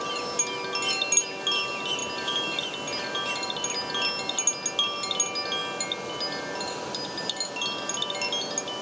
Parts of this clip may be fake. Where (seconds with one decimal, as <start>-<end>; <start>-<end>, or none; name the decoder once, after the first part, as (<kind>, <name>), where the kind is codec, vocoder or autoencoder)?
none